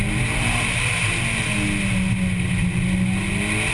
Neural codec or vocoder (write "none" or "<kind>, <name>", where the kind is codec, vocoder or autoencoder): none